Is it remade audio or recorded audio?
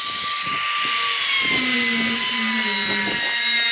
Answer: recorded